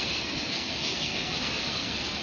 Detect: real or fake fake